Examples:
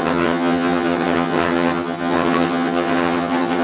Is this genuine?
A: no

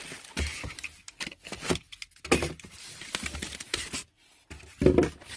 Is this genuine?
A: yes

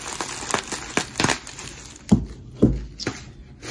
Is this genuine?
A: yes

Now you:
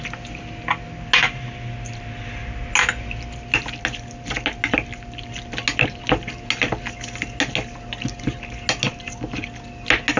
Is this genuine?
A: yes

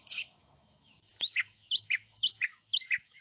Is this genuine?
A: no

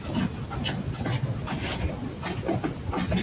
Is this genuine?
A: yes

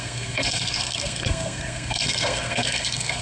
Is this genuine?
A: no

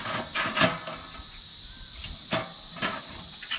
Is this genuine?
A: yes